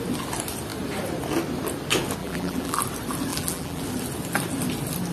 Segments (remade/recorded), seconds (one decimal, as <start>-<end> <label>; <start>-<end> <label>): 0.0-2.2 recorded; 2.2-2.8 remade; 2.8-3.3 recorded; 3.3-3.8 remade; 3.8-5.1 recorded